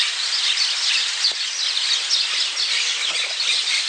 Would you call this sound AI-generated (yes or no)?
no